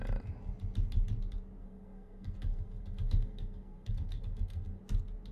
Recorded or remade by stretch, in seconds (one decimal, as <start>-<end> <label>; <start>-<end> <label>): 0.0-1.6 recorded; 1.6-4.8 remade; 4.8-5.3 recorded